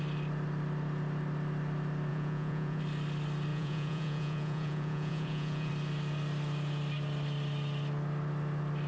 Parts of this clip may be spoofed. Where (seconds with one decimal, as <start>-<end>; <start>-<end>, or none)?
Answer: 2.1-2.8; 3.5-5.7